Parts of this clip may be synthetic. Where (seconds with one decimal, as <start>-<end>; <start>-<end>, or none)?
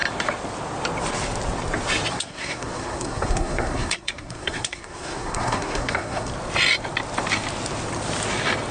2.1-6.3